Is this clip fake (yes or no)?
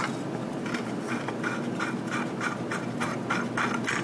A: no